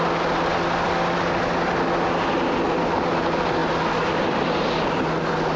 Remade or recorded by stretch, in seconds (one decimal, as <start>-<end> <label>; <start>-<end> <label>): 0.0-5.6 recorded